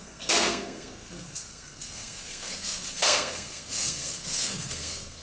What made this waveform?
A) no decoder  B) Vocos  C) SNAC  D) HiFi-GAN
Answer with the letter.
C